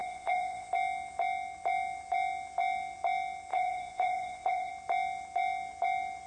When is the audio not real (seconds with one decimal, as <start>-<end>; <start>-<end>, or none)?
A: 0.0-0.7; 3.5-4.7